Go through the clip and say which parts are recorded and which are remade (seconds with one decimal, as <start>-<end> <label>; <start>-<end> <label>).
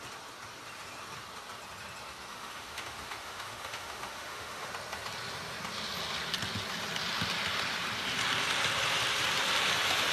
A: 0.0-2.3 recorded; 2.3-4.7 remade; 4.7-10.1 recorded